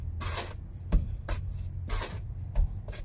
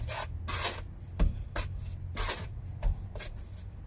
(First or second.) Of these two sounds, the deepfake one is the first